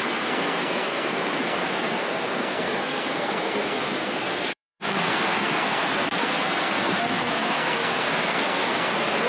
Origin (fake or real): fake